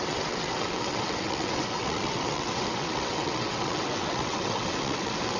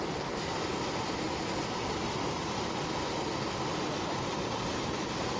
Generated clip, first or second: first